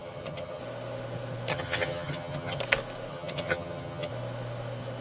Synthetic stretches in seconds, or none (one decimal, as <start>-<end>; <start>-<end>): 0.0-0.6; 1.5-2.6; 3.1-4.1